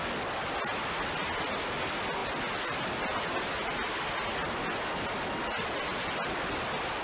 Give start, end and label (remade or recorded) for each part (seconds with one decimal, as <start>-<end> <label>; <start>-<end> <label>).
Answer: 0.0-7.0 recorded